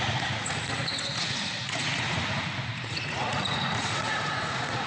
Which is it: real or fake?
fake